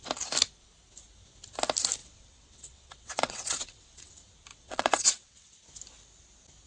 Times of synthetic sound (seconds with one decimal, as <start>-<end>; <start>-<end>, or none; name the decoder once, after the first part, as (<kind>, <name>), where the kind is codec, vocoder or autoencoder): 2.0-4.1 (vocoder, WaveNeXt); 4.5-5.5